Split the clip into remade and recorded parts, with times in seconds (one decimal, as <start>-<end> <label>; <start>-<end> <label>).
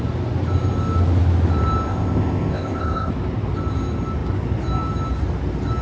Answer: 0.0-1.9 recorded; 1.9-3.1 remade; 3.1-5.8 recorded